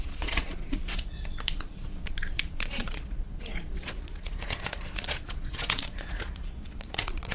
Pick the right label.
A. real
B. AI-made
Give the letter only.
B